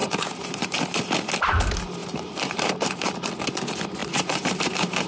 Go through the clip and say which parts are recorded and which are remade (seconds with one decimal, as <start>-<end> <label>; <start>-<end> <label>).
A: 0.0-0.8 remade; 0.8-2.0 recorded; 2.0-3.3 remade; 3.3-4.0 recorded; 4.0-5.1 remade